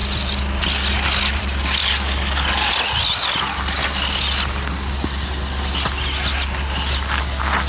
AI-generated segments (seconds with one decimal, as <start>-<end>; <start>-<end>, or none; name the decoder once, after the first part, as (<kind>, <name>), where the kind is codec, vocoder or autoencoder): 1.8-2.7 (codec, DAC)